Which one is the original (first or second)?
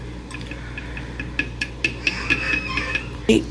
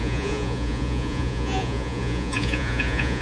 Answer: first